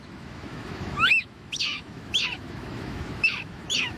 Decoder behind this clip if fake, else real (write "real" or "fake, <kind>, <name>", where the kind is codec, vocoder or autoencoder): fake, autoencoder, DAC-VAE